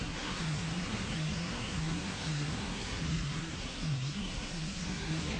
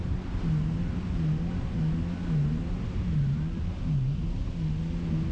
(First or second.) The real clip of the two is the second